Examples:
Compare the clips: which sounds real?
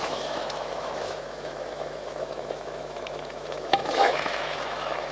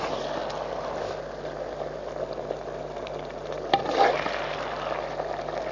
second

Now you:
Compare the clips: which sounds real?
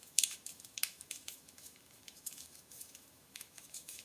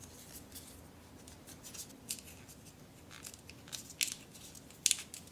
second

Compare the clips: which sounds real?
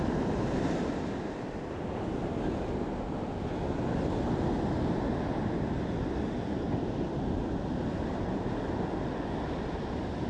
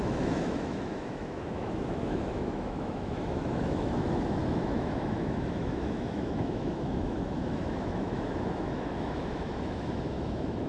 first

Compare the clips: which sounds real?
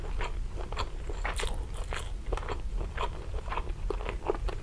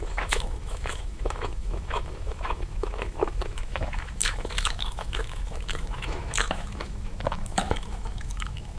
first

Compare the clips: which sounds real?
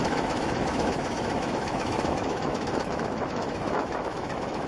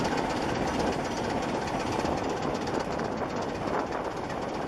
second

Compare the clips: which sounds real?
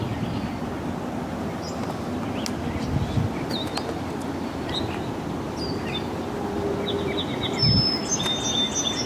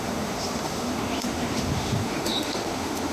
first